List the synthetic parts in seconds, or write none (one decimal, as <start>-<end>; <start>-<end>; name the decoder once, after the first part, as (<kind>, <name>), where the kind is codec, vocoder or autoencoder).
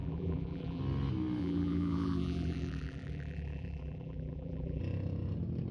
0.0-0.8 (vocoder, BigVGAN v2); 1.4-4.8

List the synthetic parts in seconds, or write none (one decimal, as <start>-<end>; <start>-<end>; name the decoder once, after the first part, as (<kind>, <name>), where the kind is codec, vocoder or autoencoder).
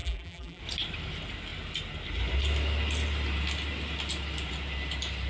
0.0-0.6 (vocoder, BigVGAN v2)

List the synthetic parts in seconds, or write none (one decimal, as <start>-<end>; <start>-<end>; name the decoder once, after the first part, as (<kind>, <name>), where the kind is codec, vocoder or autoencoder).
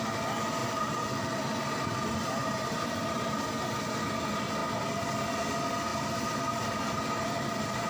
0.6-1.4 (vocoder, BigVGAN v2); 2.4-3.4; 5.9-7.9